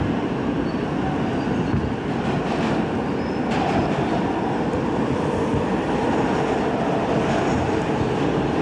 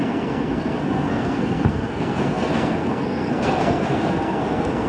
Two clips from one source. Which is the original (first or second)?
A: first